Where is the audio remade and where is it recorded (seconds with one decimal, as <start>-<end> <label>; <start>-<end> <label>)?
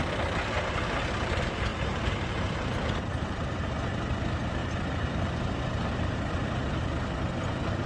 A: 0.0-1.7 recorded; 1.7-3.7 remade; 3.7-4.6 recorded; 4.6-5.1 remade; 5.1-7.9 recorded